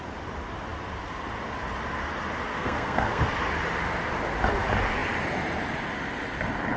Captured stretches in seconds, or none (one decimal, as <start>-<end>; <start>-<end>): 0.0-2.5; 3.2-6.8